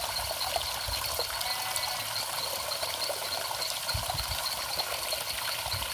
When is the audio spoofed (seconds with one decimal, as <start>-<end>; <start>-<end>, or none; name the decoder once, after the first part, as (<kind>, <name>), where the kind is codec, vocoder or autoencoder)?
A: none